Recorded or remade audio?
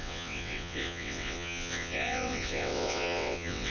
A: remade